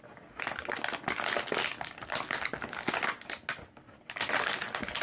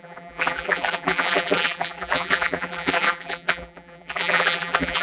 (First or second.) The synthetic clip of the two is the second